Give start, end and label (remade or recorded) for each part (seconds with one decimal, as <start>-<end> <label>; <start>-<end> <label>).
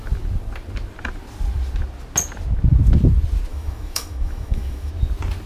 0.0-3.5 recorded; 3.5-4.9 remade; 4.9-5.5 recorded